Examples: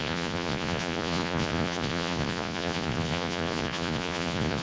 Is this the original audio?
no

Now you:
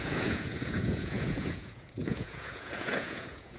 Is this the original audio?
no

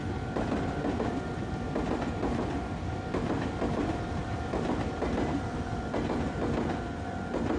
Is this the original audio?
yes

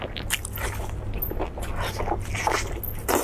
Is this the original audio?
yes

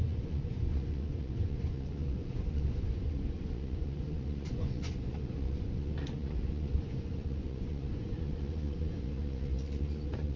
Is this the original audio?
no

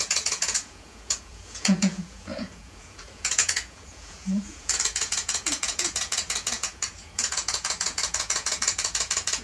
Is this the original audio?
no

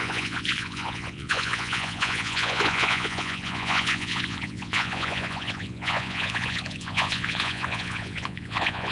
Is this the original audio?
no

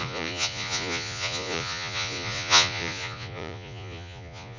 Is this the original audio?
no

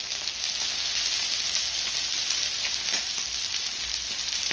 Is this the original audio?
yes